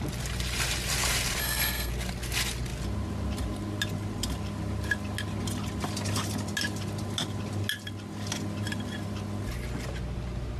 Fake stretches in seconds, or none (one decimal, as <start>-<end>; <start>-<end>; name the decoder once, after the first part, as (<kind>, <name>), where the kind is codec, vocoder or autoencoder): 1.4-1.9 (codec, SNAC)